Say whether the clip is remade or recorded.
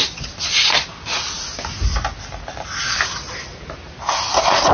recorded